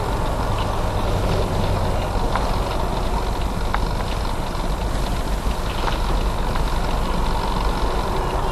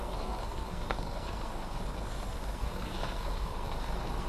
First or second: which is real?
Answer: first